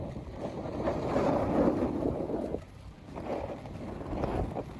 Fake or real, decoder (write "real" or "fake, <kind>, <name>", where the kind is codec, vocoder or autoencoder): real